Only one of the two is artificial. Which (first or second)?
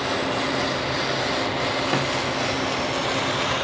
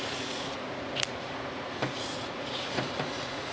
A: second